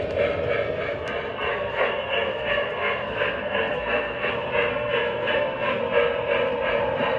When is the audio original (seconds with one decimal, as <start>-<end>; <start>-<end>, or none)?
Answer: 0.0-1.5; 4.3-4.7; 5.8-7.2

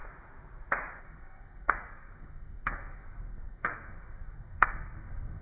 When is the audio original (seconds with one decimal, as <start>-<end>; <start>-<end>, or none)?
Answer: 0.0-1.0

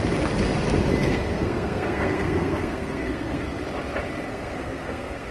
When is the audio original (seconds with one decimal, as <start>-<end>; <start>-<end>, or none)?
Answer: 0.0-1.0; 3.6-4.3

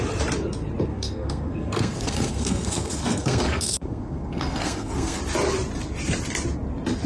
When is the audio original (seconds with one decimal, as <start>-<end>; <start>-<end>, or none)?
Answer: 0.0-0.9; 5.2-7.1

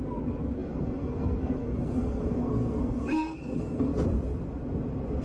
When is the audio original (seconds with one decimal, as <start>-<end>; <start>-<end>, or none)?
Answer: 3.9-5.2

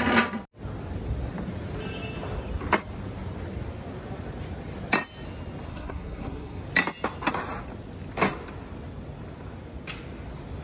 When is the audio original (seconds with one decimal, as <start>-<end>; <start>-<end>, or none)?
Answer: 0.0-5.7; 6.6-10.6